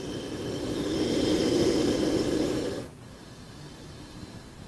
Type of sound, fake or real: real